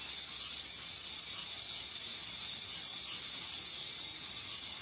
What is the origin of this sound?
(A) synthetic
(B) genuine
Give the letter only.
B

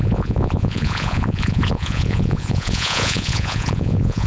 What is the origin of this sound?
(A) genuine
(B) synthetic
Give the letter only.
B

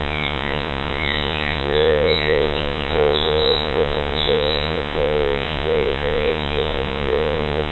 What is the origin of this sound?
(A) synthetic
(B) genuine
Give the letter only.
A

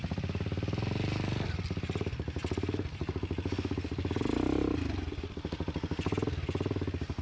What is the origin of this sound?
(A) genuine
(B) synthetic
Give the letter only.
A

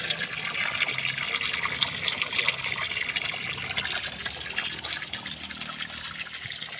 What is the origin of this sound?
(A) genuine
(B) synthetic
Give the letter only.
A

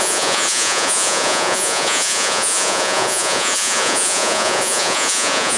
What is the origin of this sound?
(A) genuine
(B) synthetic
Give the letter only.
B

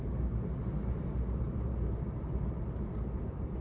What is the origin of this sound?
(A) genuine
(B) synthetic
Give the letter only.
A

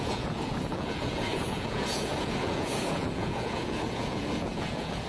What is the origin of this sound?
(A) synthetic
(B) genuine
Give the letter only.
A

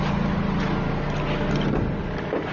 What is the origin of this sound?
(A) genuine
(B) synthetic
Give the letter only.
A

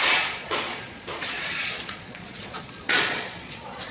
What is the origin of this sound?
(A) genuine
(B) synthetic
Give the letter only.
B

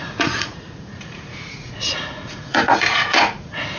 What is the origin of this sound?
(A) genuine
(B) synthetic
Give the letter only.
B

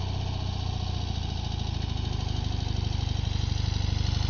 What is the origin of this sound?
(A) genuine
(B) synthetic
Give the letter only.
A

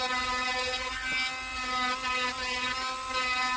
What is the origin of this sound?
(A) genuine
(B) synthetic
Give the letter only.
A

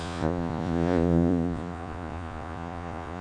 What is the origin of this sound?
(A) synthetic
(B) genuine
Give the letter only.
A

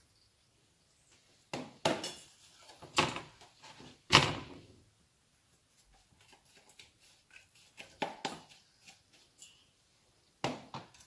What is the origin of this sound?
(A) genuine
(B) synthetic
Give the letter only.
A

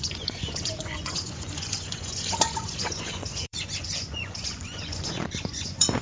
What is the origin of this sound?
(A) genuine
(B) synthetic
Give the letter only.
B